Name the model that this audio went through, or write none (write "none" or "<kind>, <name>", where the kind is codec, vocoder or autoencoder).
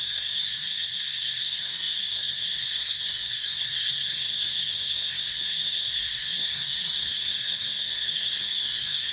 codec, SNAC